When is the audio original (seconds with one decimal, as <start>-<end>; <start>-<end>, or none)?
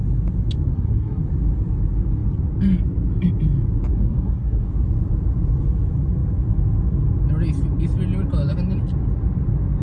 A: 0.0-0.7; 1.2-3.9; 4.7-9.8